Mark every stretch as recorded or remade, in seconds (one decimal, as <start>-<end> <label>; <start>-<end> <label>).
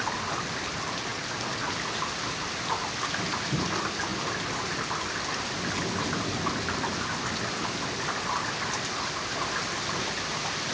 0.0-10.7 recorded